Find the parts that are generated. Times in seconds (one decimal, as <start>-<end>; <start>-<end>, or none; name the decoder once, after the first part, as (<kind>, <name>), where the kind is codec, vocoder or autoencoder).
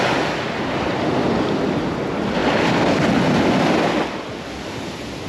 none